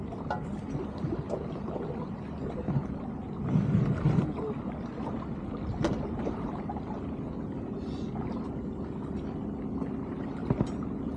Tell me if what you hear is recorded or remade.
recorded